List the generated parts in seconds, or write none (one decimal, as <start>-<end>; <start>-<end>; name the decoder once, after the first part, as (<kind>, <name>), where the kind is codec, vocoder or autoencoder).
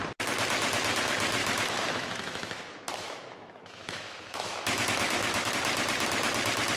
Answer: 1.4-5.5 (autoencoder, DAC-VAE)